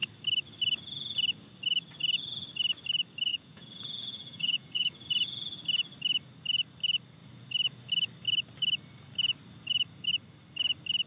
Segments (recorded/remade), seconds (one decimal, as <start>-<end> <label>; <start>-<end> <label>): 0.0-3.3 recorded; 3.3-4.9 remade; 4.9-11.1 recorded